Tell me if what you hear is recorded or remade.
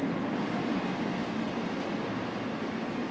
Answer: recorded